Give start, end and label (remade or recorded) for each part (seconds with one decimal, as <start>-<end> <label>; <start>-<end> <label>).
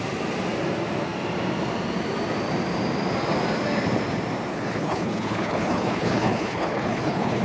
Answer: 0.0-4.5 recorded; 4.5-7.4 remade